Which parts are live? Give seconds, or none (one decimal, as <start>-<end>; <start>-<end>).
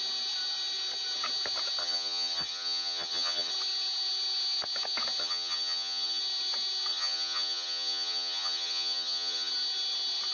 0.0-1.8; 3.5-5.2; 6.2-6.9; 9.5-10.3